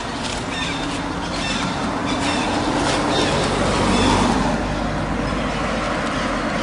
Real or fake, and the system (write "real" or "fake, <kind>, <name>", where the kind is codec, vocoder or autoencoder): real